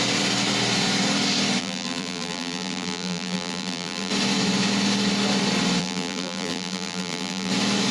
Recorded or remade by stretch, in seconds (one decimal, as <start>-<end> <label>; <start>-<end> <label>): 0.0-1.6 recorded; 1.6-4.1 remade; 4.1-5.8 recorded; 5.8-7.5 remade; 7.5-7.9 recorded